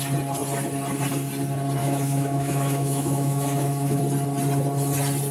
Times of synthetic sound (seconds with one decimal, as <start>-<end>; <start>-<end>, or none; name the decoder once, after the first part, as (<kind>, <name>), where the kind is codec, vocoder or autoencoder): 1.8-4.0 (autoencoder, DAC-VAE)